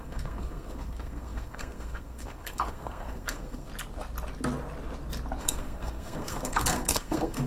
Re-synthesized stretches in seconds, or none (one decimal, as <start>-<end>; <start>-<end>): 0.0-3.7; 5.4-7.5